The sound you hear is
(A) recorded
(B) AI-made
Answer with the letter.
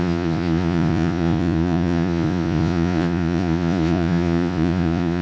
B